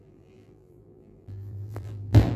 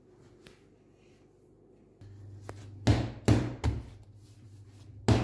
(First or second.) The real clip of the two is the second